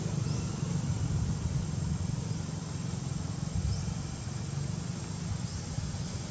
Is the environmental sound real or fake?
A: real